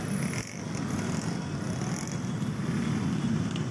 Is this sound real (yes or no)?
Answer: yes